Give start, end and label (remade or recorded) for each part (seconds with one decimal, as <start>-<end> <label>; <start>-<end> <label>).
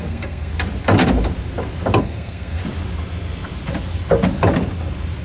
0.0-0.5 remade; 0.5-2.0 recorded; 2.0-2.6 remade; 2.6-5.2 recorded